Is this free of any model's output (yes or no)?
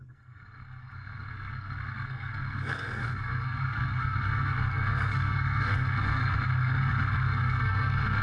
no